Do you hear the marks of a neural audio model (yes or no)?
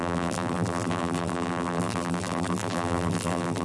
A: yes